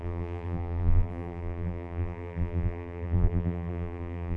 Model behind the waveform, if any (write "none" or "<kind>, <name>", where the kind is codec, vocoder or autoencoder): vocoder, BigVGAN v2